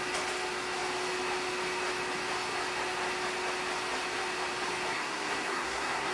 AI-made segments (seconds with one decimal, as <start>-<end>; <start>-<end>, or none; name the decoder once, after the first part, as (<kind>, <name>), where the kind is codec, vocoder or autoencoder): 4.9-6.1 (codec, SNAC)